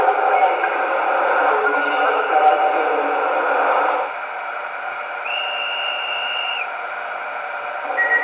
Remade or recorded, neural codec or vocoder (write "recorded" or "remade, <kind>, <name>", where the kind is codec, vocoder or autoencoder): recorded